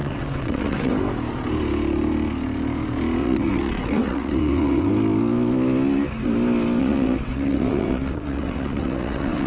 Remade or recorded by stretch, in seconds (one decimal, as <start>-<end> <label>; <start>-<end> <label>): 0.0-0.9 remade; 0.9-3.2 recorded; 3.2-4.9 remade; 4.9-6.8 recorded; 6.8-9.5 remade

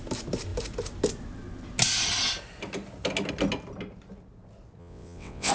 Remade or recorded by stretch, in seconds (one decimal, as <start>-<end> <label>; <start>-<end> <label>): 0.0-4.8 recorded; 4.8-5.5 remade